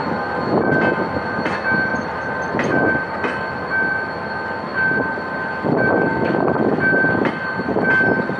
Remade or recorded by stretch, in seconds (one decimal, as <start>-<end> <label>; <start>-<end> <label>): 0.0-1.9 recorded; 1.9-3.7 remade; 3.7-4.7 recorded; 4.7-7.4 remade; 7.4-8.4 recorded